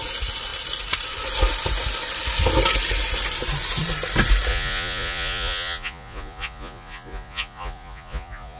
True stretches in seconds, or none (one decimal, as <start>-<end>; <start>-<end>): 0.0-4.5